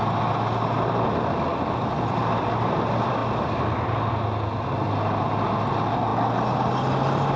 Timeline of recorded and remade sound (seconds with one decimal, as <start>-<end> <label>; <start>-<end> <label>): 0.0-1.5 recorded; 1.5-2.2 remade; 2.2-7.4 recorded

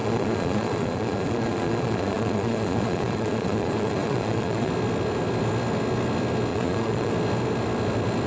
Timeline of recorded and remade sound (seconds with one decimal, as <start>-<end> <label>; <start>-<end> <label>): 0.0-4.7 remade; 4.7-6.5 recorded; 6.5-7.1 remade; 7.1-8.3 recorded

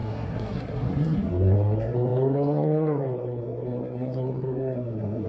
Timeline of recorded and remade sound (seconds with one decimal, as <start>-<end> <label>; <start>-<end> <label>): 0.0-5.3 remade

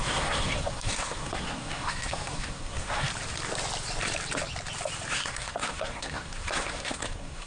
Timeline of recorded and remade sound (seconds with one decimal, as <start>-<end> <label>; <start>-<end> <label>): 0.0-3.1 remade; 3.1-5.1 recorded; 5.1-7.5 remade

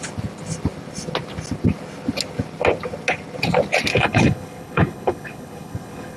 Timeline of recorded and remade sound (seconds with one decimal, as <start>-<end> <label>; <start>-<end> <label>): 0.0-3.9 recorded; 3.9-6.2 remade

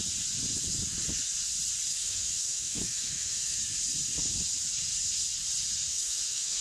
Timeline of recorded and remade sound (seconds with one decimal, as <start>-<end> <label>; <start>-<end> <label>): 0.0-2.0 recorded; 2.0-3.6 remade; 3.6-5.9 recorded; 5.9-6.6 remade

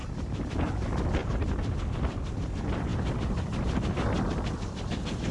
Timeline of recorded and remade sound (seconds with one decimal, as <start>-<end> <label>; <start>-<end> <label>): 0.0-5.3 recorded

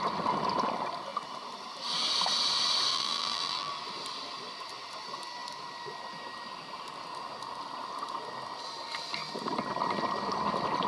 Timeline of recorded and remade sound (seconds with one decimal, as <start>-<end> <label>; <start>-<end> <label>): 0.0-2.9 recorded; 2.9-3.7 remade; 3.7-10.9 recorded